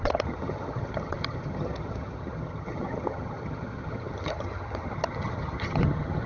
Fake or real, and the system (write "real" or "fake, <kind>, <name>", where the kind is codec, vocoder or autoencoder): fake, vocoder, HiFi-GAN